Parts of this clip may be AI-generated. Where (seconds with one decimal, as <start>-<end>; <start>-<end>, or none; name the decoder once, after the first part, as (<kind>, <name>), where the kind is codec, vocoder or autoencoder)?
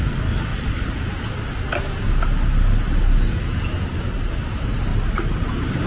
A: none